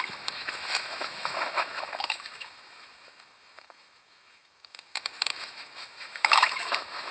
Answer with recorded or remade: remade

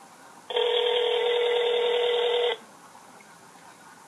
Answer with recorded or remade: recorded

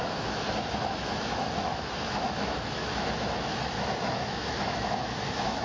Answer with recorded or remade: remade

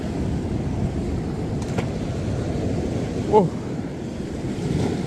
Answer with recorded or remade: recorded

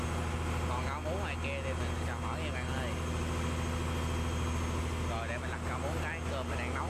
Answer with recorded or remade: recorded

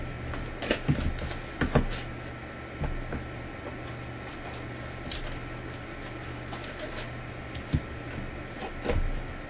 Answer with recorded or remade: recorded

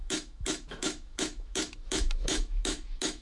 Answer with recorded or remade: remade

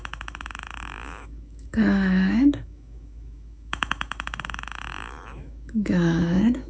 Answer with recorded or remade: remade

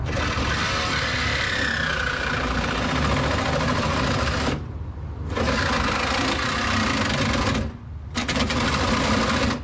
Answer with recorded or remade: recorded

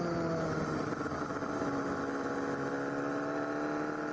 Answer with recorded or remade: recorded